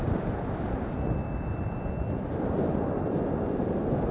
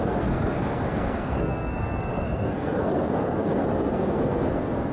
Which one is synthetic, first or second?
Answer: second